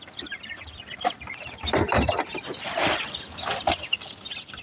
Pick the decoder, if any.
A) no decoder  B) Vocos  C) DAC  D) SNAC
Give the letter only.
A